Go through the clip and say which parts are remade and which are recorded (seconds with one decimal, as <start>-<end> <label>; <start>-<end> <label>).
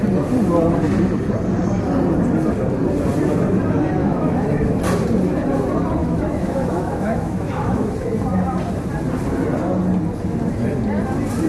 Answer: 0.0-4.0 recorded; 4.0-4.8 remade; 4.8-6.0 recorded; 6.0-7.9 remade; 7.9-11.5 recorded